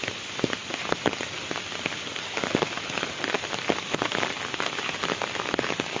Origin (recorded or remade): recorded